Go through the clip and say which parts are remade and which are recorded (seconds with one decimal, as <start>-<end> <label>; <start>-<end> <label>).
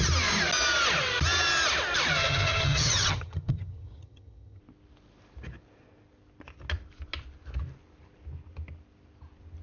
0.0-2.2 recorded; 2.2-4.6 remade; 4.6-9.6 recorded